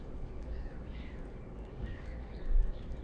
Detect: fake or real fake